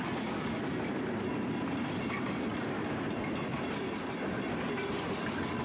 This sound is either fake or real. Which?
fake